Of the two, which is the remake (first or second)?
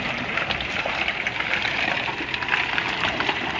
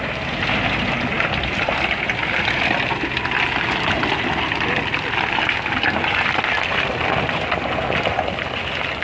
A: first